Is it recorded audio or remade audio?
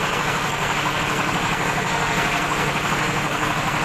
remade